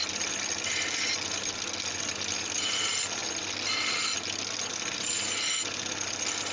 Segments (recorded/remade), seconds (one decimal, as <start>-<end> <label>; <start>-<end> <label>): 0.0-6.5 recorded